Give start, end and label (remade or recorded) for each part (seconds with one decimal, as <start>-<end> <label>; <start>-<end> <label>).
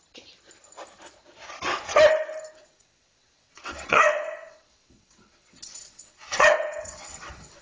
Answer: 0.0-2.6 recorded; 2.6-7.6 remade